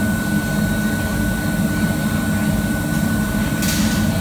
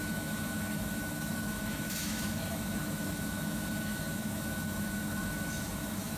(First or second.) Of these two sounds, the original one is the first